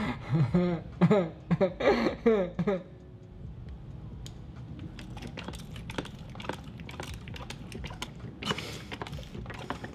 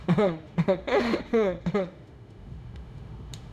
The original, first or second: first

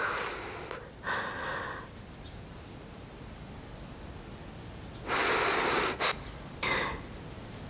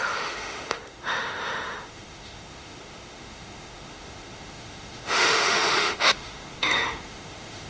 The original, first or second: first